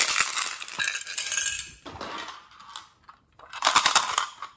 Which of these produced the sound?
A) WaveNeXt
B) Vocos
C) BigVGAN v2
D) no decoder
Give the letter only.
D